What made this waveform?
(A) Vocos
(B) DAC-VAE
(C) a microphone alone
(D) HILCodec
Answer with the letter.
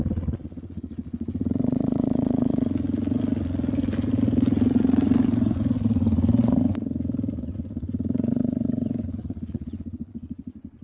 A